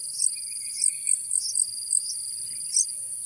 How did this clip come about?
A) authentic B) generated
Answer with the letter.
A